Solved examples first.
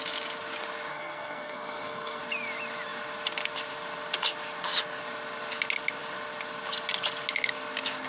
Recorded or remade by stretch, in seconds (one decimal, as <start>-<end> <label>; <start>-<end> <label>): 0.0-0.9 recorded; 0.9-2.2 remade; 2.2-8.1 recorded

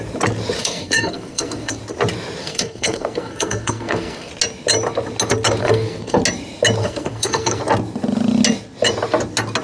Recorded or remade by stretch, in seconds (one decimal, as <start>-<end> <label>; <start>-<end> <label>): 0.0-0.6 recorded; 0.6-1.8 remade; 1.8-2.4 recorded; 2.4-4.3 remade; 4.3-5.6 recorded; 5.6-6.2 remade; 6.2-6.8 recorded; 6.8-7.6 remade; 7.6-9.6 recorded

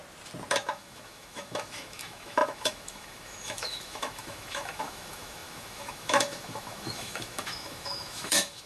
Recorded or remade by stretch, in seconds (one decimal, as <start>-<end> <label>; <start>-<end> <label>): 0.0-0.5 recorded; 0.5-8.7 remade

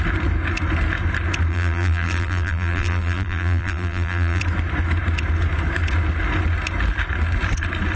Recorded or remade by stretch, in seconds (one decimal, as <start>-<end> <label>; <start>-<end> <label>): 0.0-1.5 recorded; 1.5-4.4 remade; 4.4-8.0 recorded

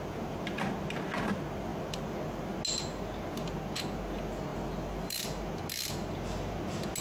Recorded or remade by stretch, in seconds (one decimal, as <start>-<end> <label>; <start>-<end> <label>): 0.0-1.7 recorded; 1.7-2.4 remade; 2.4-4.5 recorded; 4.5-5.2 remade; 5.2-7.0 recorded

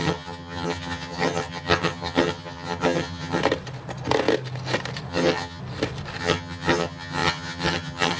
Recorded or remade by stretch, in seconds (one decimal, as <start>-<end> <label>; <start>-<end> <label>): 0.0-3.4 remade; 3.4-5.1 recorded; 5.1-5.6 remade; 5.6-6.2 recorded; 6.2-8.2 remade

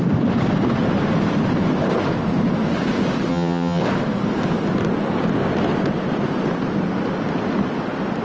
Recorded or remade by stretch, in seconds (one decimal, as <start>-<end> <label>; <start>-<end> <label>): 0.0-3.3 recorded; 3.3-3.8 remade; 3.8-8.2 recorded